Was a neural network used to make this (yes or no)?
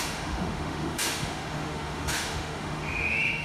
yes